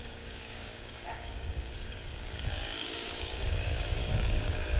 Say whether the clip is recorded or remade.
remade